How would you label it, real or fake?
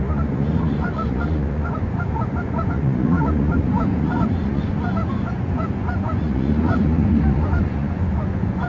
fake